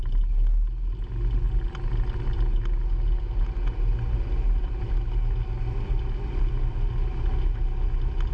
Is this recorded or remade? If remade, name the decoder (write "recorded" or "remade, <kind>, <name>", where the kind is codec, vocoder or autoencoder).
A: recorded